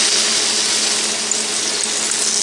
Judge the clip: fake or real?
real